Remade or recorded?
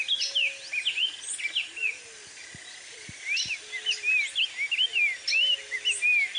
recorded